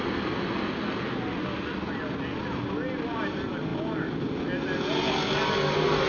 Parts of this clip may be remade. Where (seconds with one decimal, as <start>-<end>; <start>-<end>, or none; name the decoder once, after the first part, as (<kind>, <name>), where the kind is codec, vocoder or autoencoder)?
none